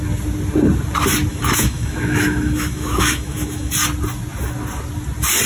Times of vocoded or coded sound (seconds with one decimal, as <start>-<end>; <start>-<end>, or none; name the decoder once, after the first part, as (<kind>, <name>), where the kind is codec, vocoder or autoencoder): 1.3-3.7 (autoencoder, DAC-VAE)